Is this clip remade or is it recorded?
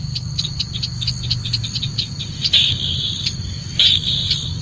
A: recorded